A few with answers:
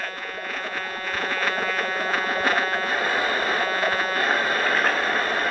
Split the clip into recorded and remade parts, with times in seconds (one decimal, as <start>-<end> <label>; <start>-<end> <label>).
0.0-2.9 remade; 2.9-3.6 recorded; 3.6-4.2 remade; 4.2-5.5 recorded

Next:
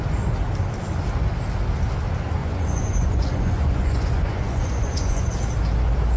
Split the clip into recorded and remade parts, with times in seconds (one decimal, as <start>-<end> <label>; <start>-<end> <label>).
0.0-2.4 recorded; 2.4-5.3 remade; 5.3-6.2 recorded

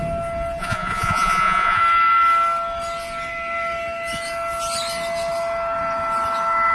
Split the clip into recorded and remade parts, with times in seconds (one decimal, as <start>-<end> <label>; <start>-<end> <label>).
0.0-0.6 recorded; 0.6-1.8 remade; 1.8-6.7 recorded

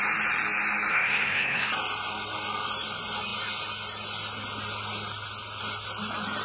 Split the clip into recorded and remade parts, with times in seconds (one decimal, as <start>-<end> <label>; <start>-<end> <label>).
0.0-0.9 recorded; 0.9-1.7 remade; 1.7-6.4 recorded

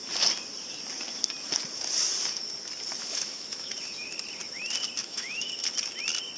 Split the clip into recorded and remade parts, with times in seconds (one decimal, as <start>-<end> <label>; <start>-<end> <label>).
0.0-3.0 recorded; 3.0-3.7 remade; 3.7-5.0 recorded; 5.0-5.5 remade; 5.5-6.4 recorded

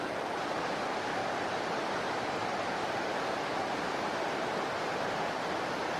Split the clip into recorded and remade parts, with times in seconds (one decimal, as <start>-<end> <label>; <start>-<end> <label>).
0.0-1.2 recorded; 1.2-4.8 remade; 4.8-6.0 recorded

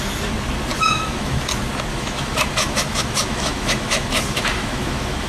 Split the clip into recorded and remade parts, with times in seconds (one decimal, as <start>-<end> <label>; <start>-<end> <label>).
0.0-0.7 recorded; 0.7-1.4 remade; 1.4-1.9 recorded; 1.9-5.3 remade

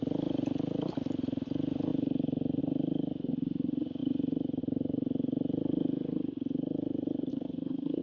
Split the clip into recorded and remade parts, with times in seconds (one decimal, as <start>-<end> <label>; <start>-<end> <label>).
0.0-7.3 recorded; 7.3-8.0 remade